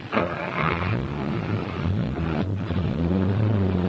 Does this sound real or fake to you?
fake